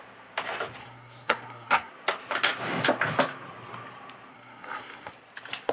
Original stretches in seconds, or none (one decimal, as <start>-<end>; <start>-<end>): 0.0-0.8; 1.9-4.3; 5.1-5.7